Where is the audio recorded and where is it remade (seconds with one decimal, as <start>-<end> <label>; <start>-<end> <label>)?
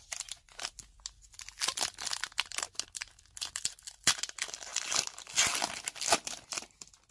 0.0-7.1 recorded